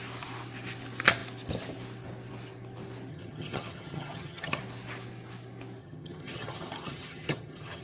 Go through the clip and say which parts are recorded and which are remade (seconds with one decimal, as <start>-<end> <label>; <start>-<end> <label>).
0.0-3.1 recorded; 3.1-4.6 remade; 4.6-5.8 recorded; 5.8-7.8 remade